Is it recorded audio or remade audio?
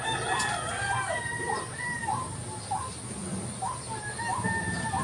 recorded